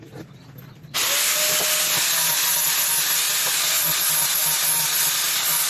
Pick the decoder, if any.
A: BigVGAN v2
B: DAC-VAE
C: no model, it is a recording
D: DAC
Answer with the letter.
C